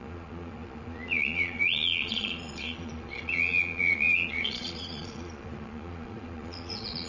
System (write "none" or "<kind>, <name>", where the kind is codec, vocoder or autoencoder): vocoder, Vocos